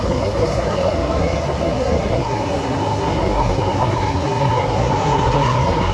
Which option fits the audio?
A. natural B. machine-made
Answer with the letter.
B